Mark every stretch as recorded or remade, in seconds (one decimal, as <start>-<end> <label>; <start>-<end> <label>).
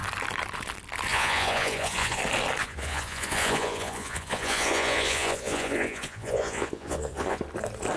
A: 0.0-1.1 recorded; 1.1-2.2 remade; 2.2-2.6 recorded; 2.6-7.4 remade; 7.4-8.0 recorded